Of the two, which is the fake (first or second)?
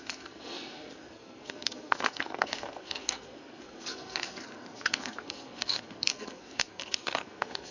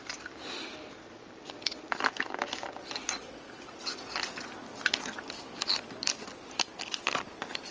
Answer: first